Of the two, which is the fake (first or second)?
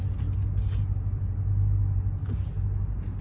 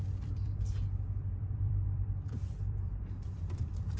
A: second